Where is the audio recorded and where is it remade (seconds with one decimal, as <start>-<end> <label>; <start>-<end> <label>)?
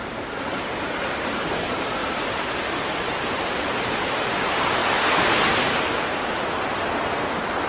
0.0-4.8 remade; 4.8-6.5 recorded; 6.5-7.7 remade